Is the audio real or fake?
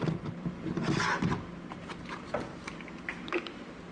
fake